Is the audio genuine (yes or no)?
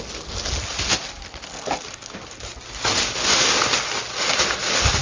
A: yes